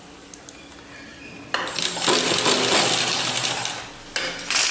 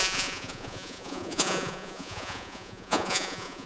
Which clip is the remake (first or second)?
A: second